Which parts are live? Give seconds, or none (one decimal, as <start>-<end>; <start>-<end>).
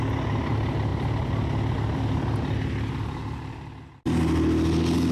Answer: 0.0-5.1